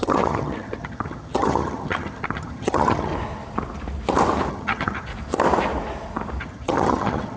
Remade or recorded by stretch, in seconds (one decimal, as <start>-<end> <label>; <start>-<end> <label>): 0.0-3.1 remade; 3.1-4.5 recorded; 4.5-5.1 remade; 5.1-6.4 recorded; 6.4-7.4 remade